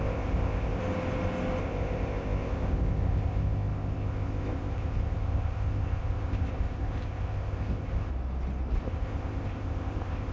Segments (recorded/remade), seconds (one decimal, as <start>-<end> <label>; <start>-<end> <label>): 0.0-0.8 remade; 0.8-1.6 recorded; 1.6-8.1 remade; 8.1-8.8 recorded; 8.8-10.3 remade